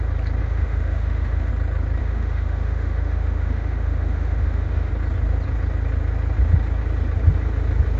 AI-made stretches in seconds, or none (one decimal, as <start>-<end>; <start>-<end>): 0.4-1.5; 2.0-4.9